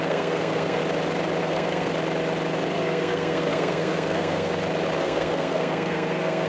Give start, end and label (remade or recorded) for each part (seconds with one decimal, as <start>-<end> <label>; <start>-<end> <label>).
0.0-0.8 remade; 0.8-1.4 recorded; 1.4-1.9 remade; 1.9-2.7 recorded; 2.7-4.5 remade; 4.5-5.0 recorded; 5.0-6.5 remade